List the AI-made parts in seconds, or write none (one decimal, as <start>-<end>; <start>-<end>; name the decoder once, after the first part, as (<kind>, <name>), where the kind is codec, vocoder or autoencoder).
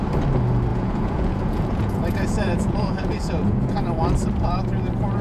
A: 0.7-3.8 (vocoder, Vocos)